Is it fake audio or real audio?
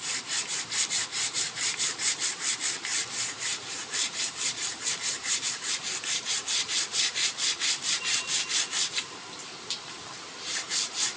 fake